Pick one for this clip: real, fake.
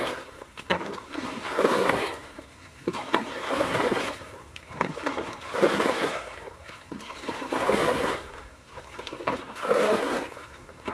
fake